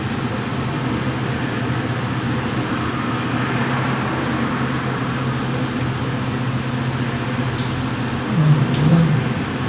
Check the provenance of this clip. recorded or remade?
recorded